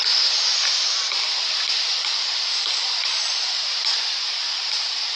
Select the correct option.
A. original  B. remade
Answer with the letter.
A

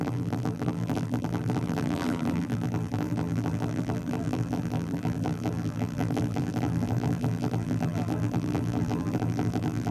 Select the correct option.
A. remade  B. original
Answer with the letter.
A